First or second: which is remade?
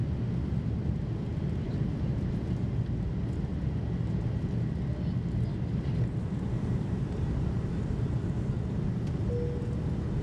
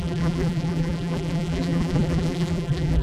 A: second